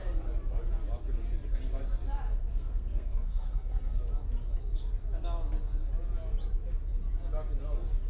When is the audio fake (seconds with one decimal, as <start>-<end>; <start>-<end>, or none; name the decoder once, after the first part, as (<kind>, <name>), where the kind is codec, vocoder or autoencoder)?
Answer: 2.5-4.0 (codec, SNAC)

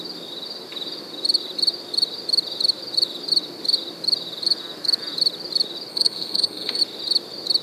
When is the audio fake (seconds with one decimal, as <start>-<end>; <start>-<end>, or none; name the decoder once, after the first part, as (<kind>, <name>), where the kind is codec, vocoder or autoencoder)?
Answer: 5.9-6.8 (codec, SNAC)

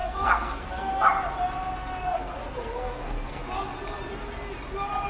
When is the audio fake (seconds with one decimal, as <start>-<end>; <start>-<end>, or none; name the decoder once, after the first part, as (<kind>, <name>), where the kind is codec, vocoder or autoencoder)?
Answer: 0.0-0.9 (codec, SNAC); 2.0-3.4

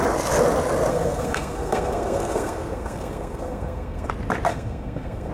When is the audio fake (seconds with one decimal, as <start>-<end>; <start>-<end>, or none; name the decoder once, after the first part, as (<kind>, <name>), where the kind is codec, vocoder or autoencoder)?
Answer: 0.9-4.1 (codec, SNAC); 4.5-5.3